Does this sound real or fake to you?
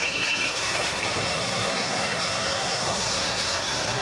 fake